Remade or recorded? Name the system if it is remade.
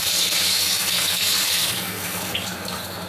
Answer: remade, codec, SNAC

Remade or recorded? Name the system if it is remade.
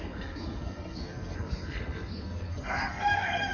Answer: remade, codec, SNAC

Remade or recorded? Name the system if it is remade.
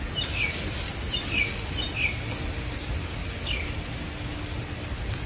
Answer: recorded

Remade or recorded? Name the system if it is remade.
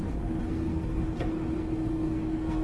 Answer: remade, codec, SNAC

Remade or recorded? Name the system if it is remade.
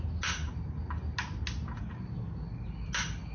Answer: recorded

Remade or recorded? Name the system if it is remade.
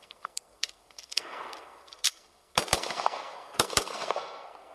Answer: remade, codec, SNAC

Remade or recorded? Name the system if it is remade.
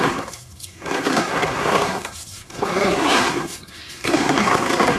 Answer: remade, codec, SNAC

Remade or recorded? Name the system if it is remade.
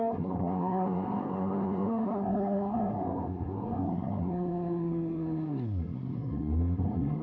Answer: remade, codec, SNAC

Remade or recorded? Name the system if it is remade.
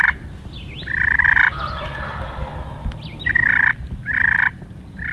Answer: recorded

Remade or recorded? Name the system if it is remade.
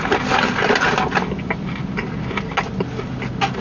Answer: recorded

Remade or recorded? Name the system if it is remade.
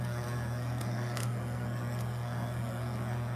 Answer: remade, codec, SNAC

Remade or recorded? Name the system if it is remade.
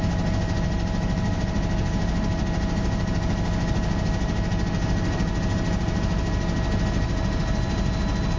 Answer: recorded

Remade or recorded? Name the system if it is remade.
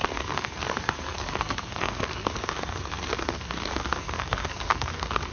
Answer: remade, codec, SNAC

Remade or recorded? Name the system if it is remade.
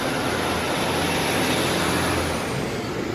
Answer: recorded